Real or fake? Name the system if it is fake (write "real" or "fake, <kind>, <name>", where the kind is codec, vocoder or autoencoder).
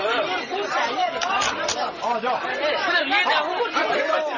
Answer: real